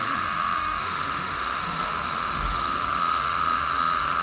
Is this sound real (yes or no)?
no